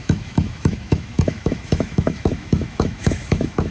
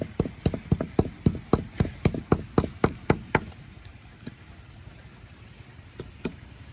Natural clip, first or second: second